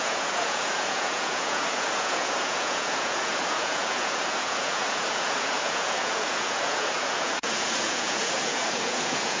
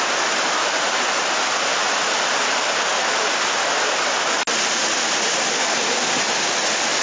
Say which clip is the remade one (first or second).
first